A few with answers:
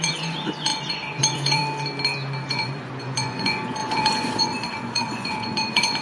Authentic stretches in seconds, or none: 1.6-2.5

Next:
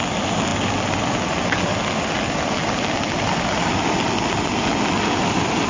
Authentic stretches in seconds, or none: 0.0-5.7

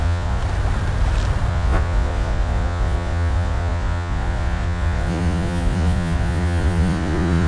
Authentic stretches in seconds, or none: 0.4-1.5

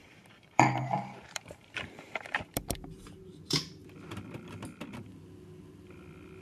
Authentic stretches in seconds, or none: 3.8-6.4

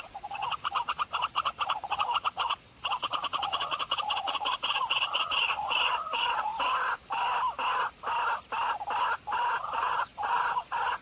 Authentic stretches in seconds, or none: 6.5-9.6